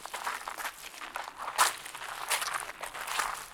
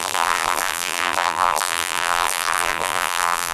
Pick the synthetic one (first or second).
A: second